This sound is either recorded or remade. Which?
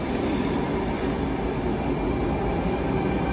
recorded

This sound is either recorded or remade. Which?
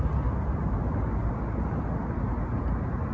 recorded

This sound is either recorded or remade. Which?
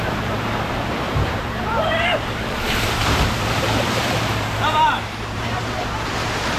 remade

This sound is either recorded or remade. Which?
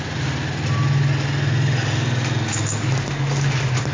recorded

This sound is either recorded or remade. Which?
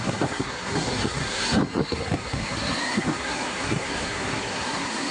remade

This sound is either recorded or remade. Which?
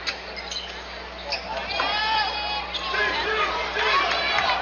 recorded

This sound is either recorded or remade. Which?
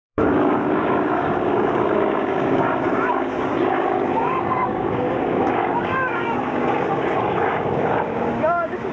remade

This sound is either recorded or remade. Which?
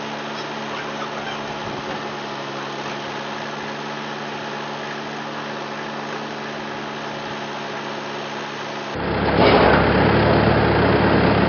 recorded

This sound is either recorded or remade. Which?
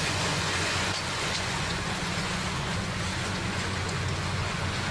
remade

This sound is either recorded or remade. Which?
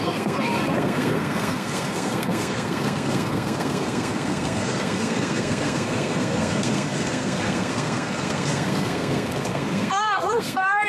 remade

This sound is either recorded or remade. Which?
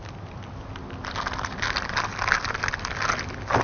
recorded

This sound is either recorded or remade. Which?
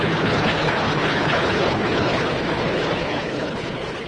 remade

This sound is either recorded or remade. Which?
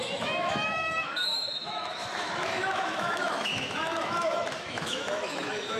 remade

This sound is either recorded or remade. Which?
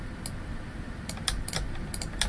recorded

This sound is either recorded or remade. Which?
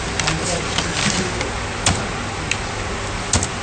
recorded